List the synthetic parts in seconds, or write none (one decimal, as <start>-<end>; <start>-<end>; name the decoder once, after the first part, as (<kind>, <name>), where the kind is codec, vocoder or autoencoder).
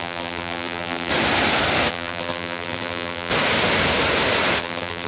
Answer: 0.0-1.1 (vocoder, BigVGAN v2); 1.9-3.3; 4.6-5.1